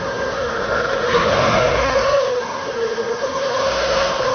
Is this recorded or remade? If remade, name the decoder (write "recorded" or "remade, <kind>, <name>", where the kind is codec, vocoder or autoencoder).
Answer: remade, codec, SNAC